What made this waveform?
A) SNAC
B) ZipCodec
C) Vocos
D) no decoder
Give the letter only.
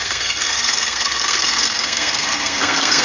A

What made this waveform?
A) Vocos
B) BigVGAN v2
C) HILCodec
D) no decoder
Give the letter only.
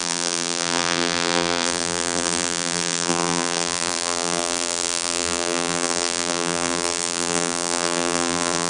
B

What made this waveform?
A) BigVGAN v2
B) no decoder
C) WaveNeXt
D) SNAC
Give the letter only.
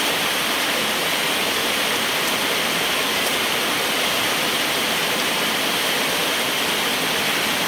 B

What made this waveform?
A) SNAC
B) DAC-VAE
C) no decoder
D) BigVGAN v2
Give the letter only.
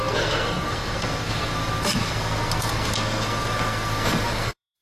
A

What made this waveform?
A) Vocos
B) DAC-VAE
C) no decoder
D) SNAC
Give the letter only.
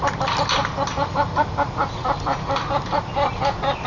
C